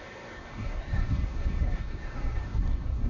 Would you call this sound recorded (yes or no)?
no